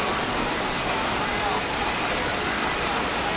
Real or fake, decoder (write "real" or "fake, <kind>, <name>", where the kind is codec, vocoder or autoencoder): real